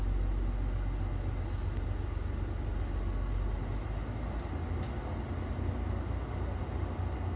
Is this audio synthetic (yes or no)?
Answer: no